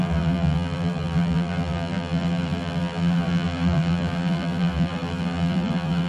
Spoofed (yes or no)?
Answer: yes